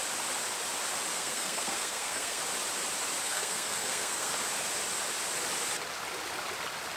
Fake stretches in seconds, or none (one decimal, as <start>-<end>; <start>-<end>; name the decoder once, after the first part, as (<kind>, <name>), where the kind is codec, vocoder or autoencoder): 1.1-2.4 (codec, SNAC); 3.2-4.3